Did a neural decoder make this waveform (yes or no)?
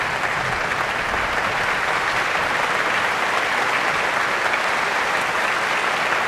no